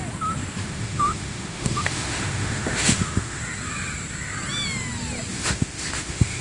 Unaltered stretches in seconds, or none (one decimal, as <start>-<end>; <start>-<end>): 0.0-0.6; 3.4-5.3